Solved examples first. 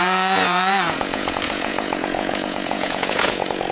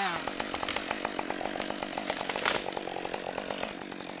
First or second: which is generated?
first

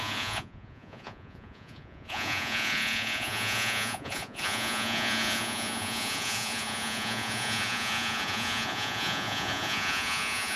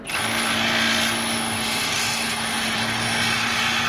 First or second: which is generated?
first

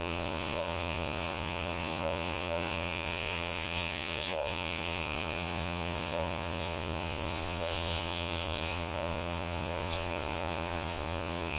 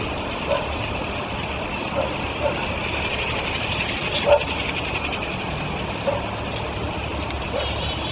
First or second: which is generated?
first